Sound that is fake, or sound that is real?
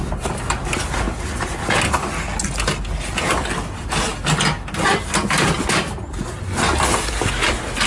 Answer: real